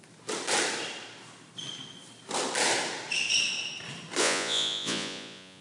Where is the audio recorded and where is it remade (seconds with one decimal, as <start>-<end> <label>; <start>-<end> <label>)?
0.0-4.2 recorded; 4.2-5.6 remade